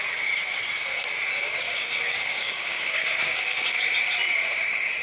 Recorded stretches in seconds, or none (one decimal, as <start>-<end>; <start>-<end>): 0.0-1.4; 3.9-5.0